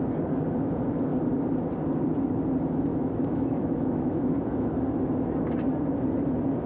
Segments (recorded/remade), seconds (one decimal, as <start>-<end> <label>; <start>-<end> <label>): 0.0-2.9 recorded; 2.9-4.7 remade; 4.7-6.7 recorded